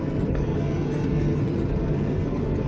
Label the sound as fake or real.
fake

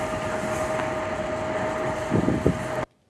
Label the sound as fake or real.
real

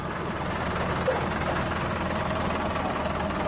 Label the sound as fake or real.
real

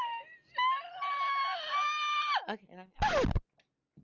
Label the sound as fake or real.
real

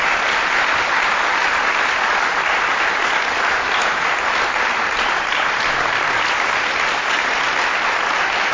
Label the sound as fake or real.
real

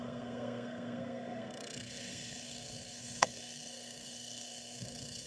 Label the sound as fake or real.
fake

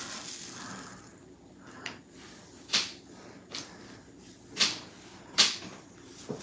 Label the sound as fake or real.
real